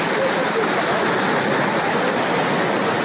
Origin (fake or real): real